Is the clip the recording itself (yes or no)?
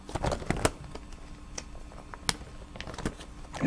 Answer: yes